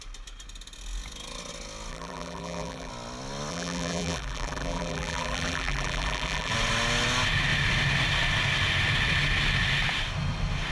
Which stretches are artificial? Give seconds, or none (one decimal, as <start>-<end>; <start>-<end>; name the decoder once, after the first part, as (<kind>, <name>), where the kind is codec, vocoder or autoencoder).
1.9-2.9 (vocoder, BigVGAN v2); 3.5-6.5